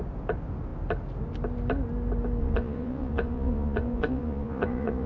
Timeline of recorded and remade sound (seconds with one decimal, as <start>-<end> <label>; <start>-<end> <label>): 0.0-2.4 recorded; 2.4-5.1 remade